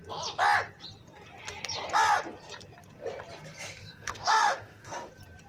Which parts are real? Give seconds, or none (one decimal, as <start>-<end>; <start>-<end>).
0.0-3.8; 5.1-5.5